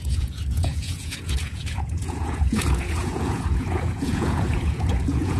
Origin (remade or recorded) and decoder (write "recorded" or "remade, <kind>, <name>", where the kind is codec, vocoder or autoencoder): remade, vocoder, Vocos